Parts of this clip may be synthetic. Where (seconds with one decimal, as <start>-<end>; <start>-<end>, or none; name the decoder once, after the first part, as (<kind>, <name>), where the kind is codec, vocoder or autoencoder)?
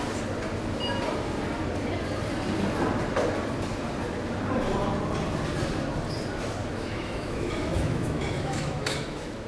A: 6.6-9.5 (autoencoder, DAC-VAE)